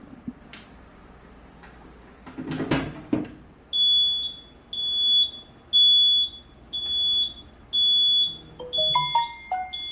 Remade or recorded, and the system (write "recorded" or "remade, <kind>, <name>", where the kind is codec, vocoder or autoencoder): recorded